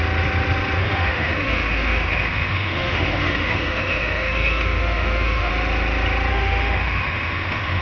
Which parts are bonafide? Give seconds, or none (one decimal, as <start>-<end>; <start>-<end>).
0.0-0.8; 5.5-6.3